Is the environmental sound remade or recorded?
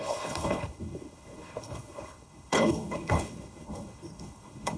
remade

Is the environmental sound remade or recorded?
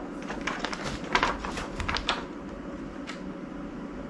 recorded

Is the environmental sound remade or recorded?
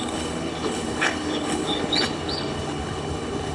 remade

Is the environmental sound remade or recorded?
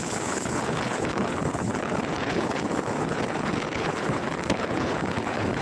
remade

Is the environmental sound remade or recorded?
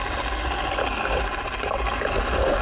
recorded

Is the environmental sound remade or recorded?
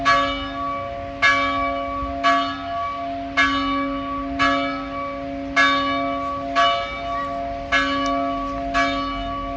recorded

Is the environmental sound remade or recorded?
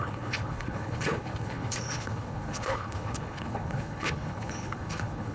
remade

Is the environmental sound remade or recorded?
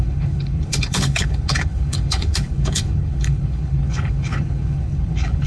remade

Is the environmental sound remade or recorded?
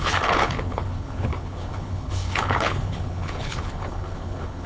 remade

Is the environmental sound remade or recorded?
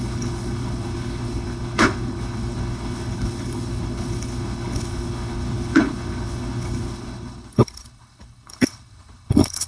remade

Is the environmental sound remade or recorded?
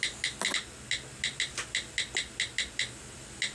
recorded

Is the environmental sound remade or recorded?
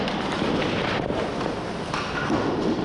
recorded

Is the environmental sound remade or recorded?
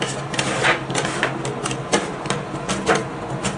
recorded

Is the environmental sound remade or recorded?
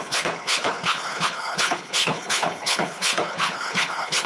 remade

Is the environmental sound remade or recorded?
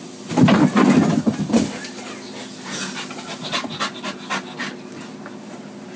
recorded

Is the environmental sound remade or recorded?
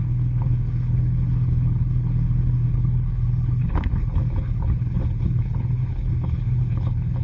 remade